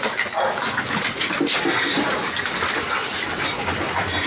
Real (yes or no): yes